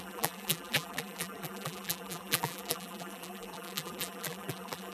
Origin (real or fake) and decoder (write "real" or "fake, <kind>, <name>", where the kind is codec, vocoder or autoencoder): fake, vocoder, BigVGAN v2